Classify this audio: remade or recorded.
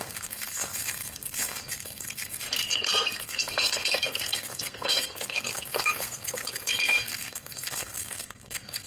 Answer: remade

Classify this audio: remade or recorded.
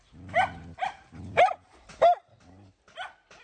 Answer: recorded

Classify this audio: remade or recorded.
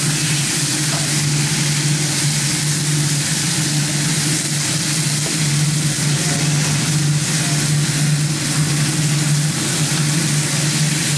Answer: recorded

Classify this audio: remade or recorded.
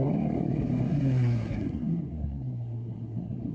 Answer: remade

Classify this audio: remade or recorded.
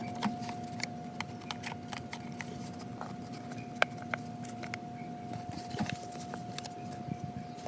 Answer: recorded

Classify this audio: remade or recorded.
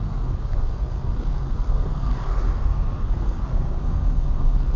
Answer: remade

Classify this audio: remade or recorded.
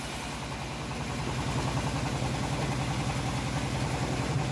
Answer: recorded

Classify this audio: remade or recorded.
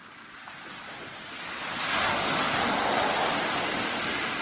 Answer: recorded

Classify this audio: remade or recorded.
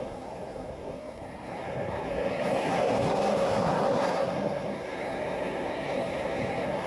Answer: remade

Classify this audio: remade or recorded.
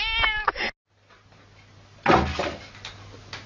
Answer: recorded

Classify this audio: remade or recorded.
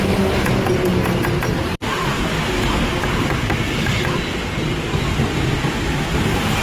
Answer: recorded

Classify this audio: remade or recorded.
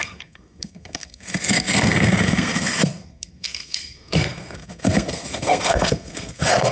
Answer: remade